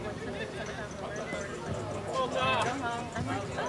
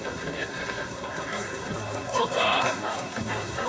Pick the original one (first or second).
first